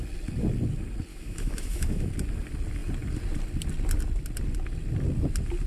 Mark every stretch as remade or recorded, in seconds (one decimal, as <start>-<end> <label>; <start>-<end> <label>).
0.0-1.1 recorded; 1.1-2.1 remade; 2.1-5.7 recorded